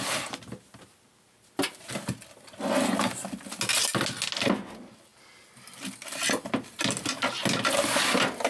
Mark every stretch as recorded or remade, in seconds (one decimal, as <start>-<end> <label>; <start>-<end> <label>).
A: 0.0-8.5 recorded